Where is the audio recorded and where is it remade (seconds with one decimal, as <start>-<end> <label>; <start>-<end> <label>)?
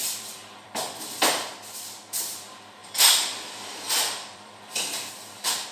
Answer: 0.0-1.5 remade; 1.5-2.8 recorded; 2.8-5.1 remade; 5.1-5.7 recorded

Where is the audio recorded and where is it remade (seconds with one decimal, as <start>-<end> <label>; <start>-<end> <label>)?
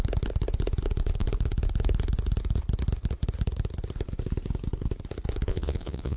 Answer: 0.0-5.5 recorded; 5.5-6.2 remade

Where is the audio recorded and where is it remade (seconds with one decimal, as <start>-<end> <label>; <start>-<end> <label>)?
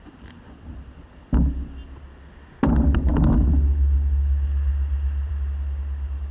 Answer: 0.0-6.3 recorded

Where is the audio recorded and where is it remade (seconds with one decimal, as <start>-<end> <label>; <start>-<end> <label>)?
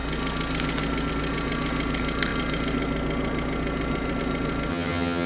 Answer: 0.0-4.7 recorded; 4.7-5.3 remade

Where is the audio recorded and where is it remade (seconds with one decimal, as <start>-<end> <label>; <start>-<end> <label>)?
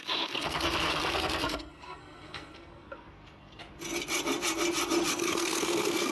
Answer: 0.0-3.6 remade; 3.6-5.1 recorded; 5.1-6.1 remade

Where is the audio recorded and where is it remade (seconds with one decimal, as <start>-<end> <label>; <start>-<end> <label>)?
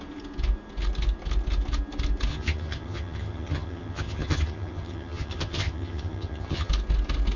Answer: 0.0-2.3 recorded; 2.3-6.7 remade; 6.7-7.4 recorded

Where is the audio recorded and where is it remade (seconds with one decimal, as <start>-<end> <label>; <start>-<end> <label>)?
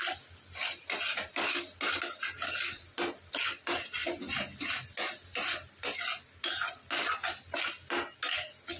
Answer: 0.0-8.8 recorded